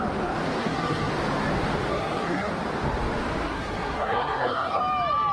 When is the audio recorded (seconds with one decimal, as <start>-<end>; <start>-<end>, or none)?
0.0-0.6; 1.1-1.9; 2.5-3.4; 4.8-5.3